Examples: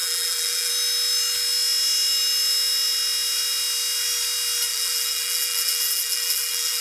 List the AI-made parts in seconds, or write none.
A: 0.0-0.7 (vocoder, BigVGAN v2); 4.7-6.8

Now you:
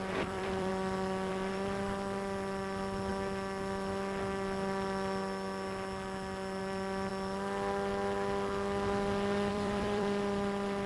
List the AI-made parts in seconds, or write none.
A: 0.0-0.7 (vocoder, BigVGAN v2); 1.3-3.1; 6.6-7.1; 9.5-10.9

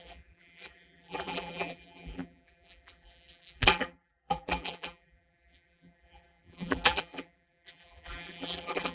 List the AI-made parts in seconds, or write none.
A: 0.0-8.9 (vocoder, BigVGAN v2)